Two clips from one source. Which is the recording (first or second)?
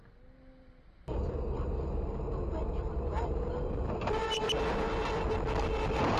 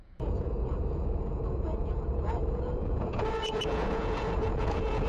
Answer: first